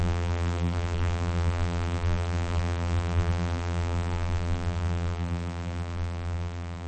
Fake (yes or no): yes